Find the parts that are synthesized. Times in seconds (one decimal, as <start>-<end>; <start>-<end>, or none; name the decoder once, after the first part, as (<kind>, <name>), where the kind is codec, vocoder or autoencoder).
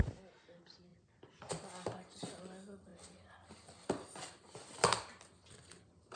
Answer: none